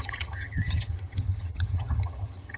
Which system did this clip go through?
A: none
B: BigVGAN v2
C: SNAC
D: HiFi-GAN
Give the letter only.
D